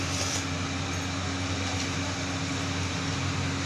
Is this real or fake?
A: real